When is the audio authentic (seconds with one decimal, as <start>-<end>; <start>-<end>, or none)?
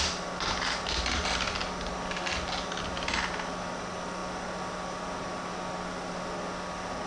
0.0-7.1